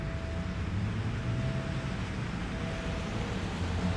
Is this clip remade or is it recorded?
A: recorded